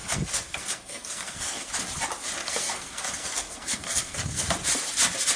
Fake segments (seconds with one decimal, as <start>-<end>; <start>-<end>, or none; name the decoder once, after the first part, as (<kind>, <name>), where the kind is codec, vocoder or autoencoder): 0.0-1.7 (codec, SNAC); 2.4-4.5